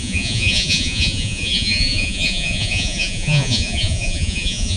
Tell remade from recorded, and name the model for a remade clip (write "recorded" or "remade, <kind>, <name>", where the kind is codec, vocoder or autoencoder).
remade, vocoder, Vocos